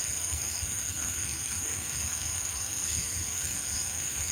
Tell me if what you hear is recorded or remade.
remade